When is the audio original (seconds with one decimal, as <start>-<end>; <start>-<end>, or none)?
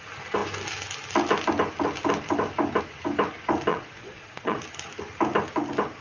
0.0-3.7; 4.6-6.0